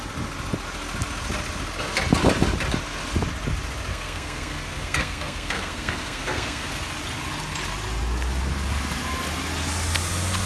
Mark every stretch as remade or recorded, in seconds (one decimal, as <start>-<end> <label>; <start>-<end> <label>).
0.0-3.9 recorded; 3.9-6.7 remade; 6.7-10.5 recorded